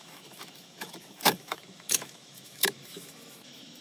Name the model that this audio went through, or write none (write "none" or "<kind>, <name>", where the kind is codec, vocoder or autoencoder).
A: autoencoder, DAC-VAE